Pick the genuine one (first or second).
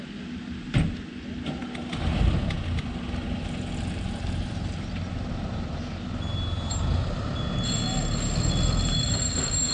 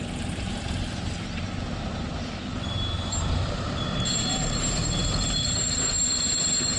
first